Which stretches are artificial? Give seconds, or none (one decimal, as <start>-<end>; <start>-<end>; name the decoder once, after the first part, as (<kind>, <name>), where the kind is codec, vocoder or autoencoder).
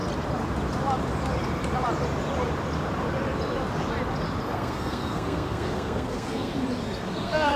4.5-6.5 (codec, SNAC); 7.0-7.6